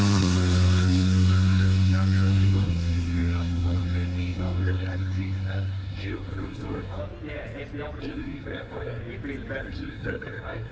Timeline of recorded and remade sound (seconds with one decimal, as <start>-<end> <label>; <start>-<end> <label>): 0.0-7.0 remade; 7.0-8.0 recorded; 8.0-9.0 remade; 9.0-9.6 recorded; 9.6-10.7 remade